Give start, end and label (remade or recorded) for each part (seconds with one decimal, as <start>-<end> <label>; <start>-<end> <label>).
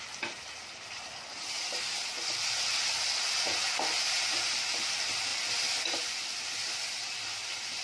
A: 0.0-7.8 recorded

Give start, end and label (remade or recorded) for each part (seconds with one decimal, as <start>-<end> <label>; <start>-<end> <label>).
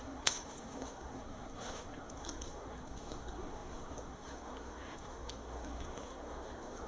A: 0.0-6.9 remade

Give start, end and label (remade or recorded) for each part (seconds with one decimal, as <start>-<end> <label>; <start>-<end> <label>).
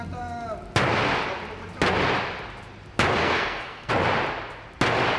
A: 0.0-3.2 recorded; 3.2-3.9 remade; 3.9-5.2 recorded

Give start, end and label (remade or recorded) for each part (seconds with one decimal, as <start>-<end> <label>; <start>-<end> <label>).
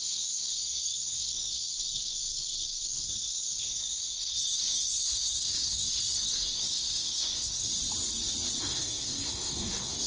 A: 0.0-7.7 remade; 7.7-8.6 recorded; 8.6-10.1 remade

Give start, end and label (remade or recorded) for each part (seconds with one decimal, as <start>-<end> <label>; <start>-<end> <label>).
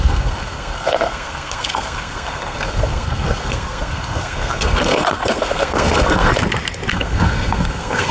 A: 0.0-6.3 remade; 6.3-6.9 recorded; 6.9-8.1 remade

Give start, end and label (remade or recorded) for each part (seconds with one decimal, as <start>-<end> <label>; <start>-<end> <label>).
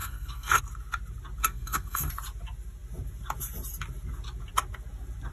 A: 0.0-0.6 remade; 0.6-1.4 recorded; 1.4-2.1 remade; 2.1-5.3 recorded